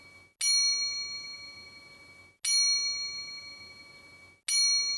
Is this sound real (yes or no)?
yes